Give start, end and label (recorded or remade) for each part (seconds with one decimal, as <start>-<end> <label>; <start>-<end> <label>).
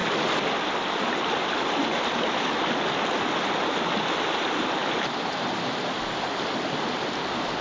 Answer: 0.0-7.6 recorded